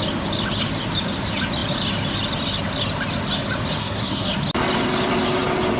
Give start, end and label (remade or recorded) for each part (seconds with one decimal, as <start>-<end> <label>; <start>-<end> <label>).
0.0-3.8 recorded; 3.8-4.3 remade; 4.3-5.8 recorded